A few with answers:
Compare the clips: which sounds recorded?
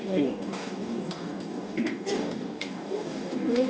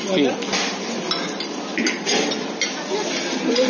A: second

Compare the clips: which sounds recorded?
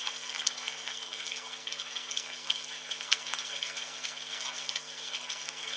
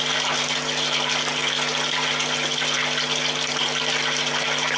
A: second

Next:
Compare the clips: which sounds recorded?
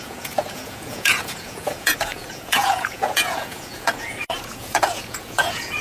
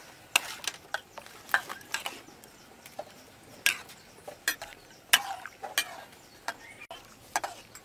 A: second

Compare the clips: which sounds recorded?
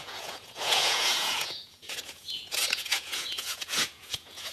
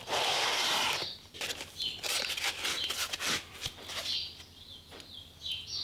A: second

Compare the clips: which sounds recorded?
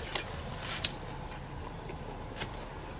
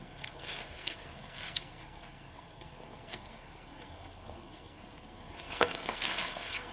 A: first